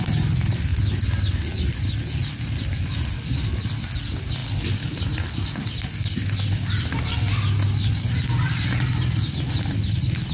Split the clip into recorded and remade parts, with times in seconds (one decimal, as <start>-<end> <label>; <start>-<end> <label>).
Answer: 0.0-10.3 recorded

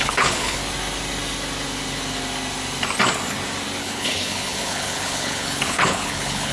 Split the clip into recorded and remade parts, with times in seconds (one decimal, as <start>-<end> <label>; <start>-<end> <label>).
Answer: 0.0-0.6 remade; 0.6-3.8 recorded; 3.8-6.5 remade

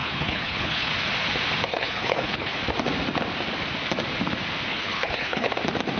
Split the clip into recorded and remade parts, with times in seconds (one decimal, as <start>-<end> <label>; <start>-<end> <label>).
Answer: 0.0-0.9 remade; 0.9-1.7 recorded; 1.7-2.6 remade; 2.6-4.7 recorded; 4.7-5.5 remade; 5.5-6.0 recorded